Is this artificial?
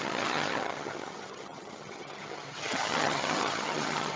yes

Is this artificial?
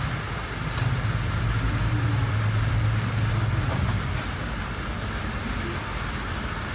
no